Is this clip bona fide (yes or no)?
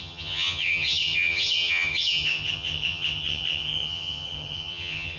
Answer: no